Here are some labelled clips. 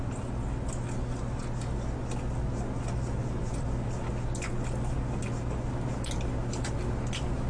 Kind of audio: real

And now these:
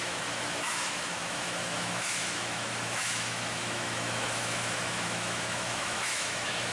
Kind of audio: fake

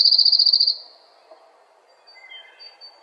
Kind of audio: real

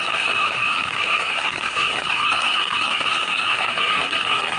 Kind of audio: fake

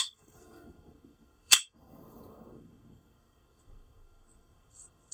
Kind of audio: fake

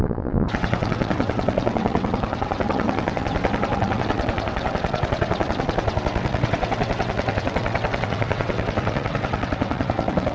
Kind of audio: fake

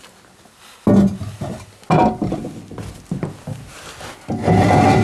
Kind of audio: real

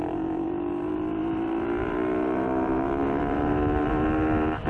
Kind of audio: fake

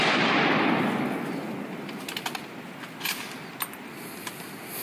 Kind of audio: real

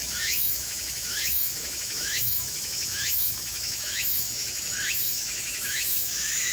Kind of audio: fake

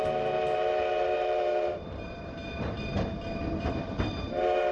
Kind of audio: fake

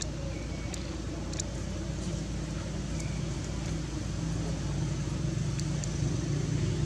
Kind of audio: real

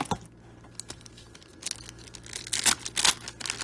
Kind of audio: real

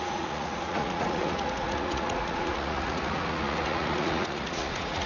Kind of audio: fake